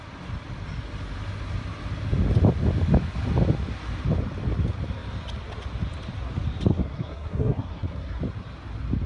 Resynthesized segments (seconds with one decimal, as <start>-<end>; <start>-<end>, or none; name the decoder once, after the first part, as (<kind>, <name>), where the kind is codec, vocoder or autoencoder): 6.7-8.2 (codec, SNAC)